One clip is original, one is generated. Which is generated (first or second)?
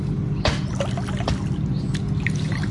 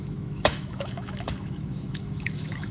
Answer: second